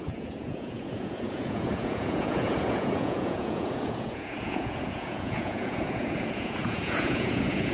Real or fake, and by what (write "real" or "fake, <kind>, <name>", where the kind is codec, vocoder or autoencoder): fake, vocoder, Vocos